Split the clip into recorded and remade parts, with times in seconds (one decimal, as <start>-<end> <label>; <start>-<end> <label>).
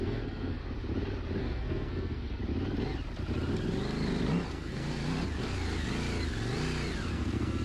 0.0-0.6 remade; 0.6-1.4 recorded; 1.4-2.4 remade; 2.4-4.5 recorded; 4.5-5.0 remade; 5.0-7.1 recorded; 7.1-7.6 remade